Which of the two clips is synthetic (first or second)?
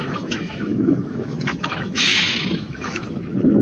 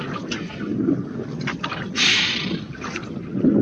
first